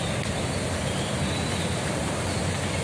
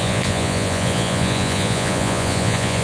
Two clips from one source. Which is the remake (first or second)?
second